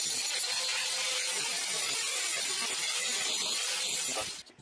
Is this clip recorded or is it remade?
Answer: recorded